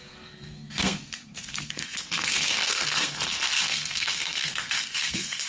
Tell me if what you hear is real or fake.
fake